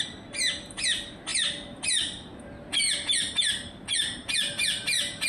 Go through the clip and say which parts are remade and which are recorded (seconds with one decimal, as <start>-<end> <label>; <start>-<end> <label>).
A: 0.0-5.3 recorded